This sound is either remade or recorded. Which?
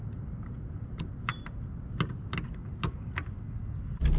recorded